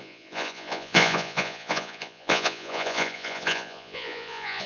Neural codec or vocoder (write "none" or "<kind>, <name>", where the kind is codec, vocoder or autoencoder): vocoder, Vocos